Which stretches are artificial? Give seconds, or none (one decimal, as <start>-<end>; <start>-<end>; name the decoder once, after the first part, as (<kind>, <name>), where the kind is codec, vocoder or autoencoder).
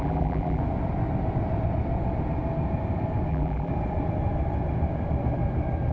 0.0-0.6 (vocoder, BigVGAN v2); 3.3-3.7